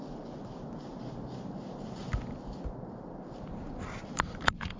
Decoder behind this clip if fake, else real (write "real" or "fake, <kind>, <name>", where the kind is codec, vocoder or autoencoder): real